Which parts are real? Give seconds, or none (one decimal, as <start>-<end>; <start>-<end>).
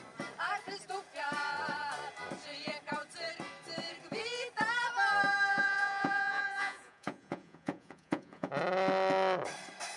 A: 0.0-5.5; 8.5-10.0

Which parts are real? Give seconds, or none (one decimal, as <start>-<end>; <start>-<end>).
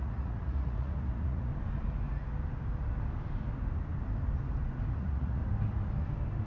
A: 1.5-4.9; 5.4-6.5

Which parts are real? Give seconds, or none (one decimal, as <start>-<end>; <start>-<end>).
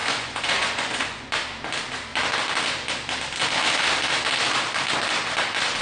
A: 1.3-5.8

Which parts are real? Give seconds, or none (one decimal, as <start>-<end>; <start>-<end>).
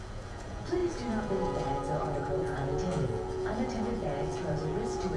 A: none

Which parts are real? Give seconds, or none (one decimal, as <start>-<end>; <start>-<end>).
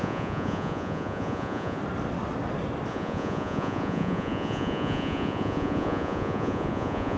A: 1.8-2.9